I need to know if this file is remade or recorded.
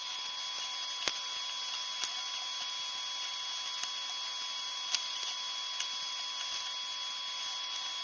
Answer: recorded